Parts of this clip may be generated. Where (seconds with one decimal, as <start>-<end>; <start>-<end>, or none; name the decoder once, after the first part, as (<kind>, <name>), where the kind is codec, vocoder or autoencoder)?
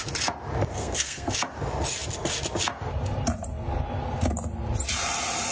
0.7-1.3 (codec, SNAC)